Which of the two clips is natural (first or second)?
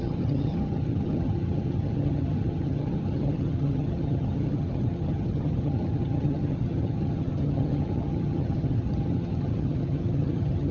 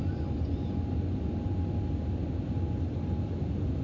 second